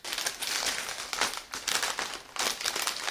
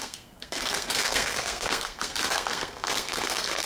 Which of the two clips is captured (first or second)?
first